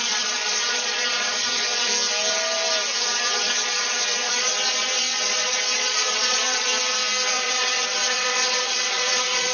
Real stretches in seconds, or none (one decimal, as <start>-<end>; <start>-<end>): 1.9-3.0; 6.7-7.3